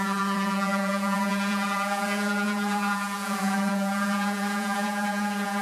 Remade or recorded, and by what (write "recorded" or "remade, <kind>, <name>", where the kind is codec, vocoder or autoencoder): remade, vocoder, Vocos